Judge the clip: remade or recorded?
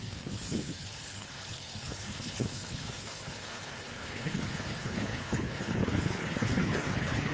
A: remade